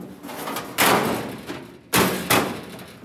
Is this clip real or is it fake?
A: real